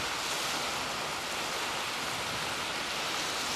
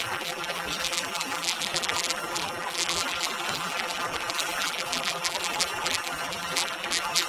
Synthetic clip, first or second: second